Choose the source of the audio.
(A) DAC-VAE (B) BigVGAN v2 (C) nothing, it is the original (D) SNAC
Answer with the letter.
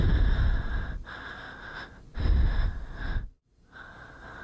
C